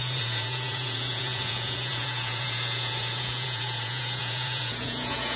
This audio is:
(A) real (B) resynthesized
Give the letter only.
B